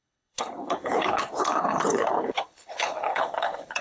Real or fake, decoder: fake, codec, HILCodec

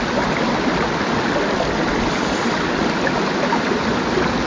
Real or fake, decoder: real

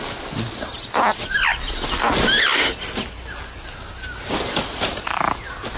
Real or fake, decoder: real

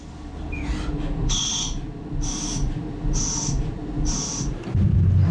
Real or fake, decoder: real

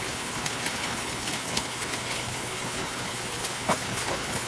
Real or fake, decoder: fake, codec, HILCodec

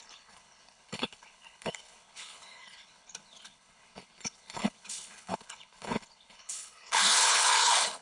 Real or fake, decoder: fake, codec, HILCodec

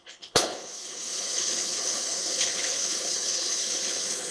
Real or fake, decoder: fake, codec, HILCodec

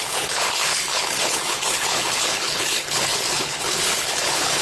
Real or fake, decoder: fake, codec, HILCodec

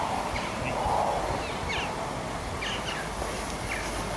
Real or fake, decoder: real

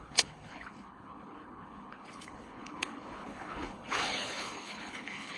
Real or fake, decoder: fake, codec, HILCodec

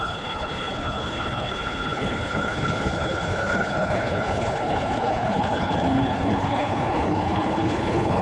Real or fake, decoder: fake, codec, HILCodec